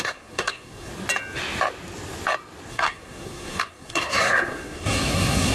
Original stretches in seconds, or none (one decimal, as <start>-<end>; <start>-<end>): 0.9-2.7